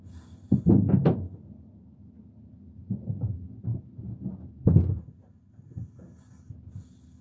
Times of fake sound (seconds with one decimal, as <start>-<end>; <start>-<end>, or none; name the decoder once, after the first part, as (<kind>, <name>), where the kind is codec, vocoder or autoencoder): none